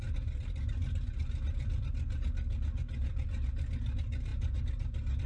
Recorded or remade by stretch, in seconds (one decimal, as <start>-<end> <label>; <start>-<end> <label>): 0.0-5.3 recorded